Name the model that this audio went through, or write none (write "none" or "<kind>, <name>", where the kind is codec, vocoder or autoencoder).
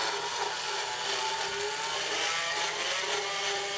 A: none